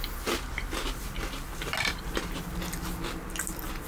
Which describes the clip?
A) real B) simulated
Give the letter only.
A